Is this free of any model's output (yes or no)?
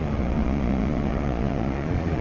no